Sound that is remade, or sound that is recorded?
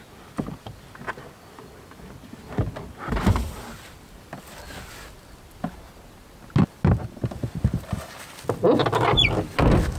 recorded